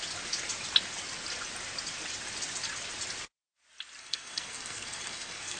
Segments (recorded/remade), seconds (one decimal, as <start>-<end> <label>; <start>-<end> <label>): 0.0-4.0 recorded; 4.0-5.6 remade